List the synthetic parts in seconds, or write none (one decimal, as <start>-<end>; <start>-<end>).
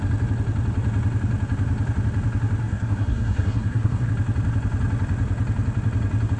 2.6-4.1